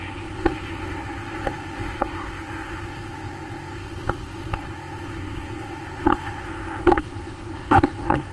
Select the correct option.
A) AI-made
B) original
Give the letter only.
A